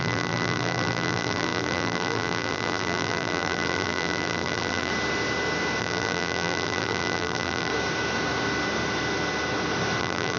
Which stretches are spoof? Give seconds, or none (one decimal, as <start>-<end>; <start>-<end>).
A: 0.0-4.9; 5.8-7.7; 10.0-10.4